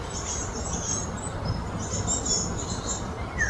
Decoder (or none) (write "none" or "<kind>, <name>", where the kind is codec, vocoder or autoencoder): none